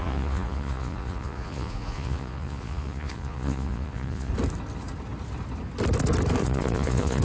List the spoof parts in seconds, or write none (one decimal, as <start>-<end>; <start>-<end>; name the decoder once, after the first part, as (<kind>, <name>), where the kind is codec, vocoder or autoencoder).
0.0-4.3 (vocoder, Vocos); 6.4-7.2